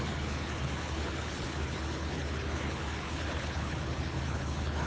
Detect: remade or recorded remade